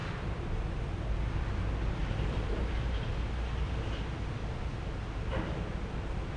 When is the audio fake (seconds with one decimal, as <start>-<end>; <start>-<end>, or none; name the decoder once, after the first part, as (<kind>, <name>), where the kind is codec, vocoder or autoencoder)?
2.0-2.6 (vocoder, BigVGAN v2)